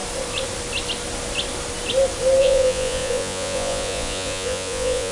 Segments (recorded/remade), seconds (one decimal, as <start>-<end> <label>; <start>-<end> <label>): 0.0-2.4 recorded; 2.4-5.1 remade